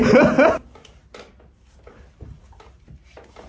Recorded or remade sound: recorded